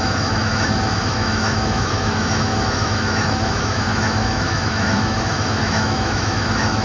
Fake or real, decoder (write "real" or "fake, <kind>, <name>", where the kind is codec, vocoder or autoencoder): fake, autoencoder, DAC-VAE